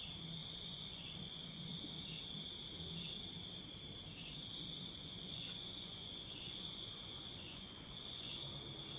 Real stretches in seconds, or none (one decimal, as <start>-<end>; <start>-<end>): 0.0-0.4; 2.1-4.2; 8.3-9.0